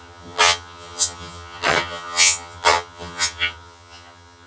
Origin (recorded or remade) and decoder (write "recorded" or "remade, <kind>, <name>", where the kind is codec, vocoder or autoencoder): remade, vocoder, HiFi-GAN